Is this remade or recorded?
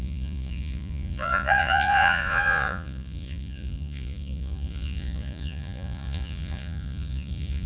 remade